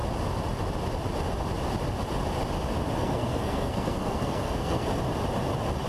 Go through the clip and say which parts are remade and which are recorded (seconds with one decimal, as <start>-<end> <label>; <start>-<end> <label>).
0.0-3.0 recorded; 3.0-5.0 remade; 5.0-5.9 recorded